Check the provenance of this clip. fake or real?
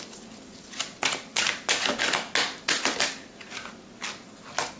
real